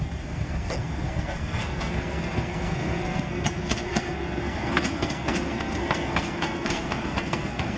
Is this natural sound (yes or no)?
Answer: no